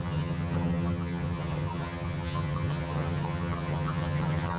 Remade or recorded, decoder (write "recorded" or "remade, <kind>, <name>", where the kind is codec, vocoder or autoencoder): remade, vocoder, HiFi-GAN